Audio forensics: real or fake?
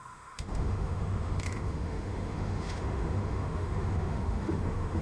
fake